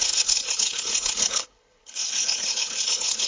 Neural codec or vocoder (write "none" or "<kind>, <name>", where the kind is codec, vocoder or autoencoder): codec, HILCodec